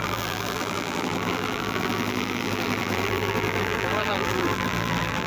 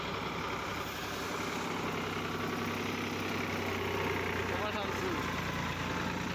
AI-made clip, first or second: first